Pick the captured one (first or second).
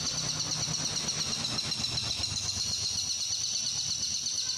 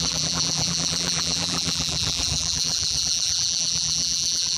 first